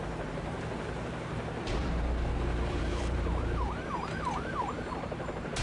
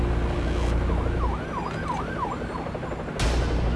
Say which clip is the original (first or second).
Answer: second